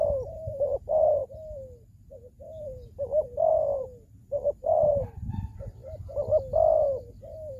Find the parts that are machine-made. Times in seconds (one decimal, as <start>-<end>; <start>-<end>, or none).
0.0-1.2; 2.6-3.7; 4.3-5.8